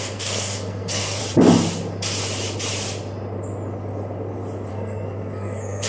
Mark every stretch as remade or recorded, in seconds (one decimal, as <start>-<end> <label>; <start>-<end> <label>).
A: 0.0-1.2 remade; 1.2-4.7 recorded; 4.7-5.9 remade